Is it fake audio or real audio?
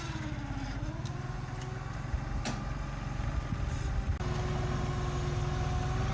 real